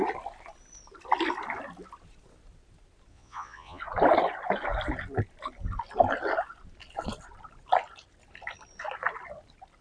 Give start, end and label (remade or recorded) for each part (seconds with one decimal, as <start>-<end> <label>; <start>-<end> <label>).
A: 0.0-3.1 recorded; 3.1-3.8 remade; 3.8-9.8 recorded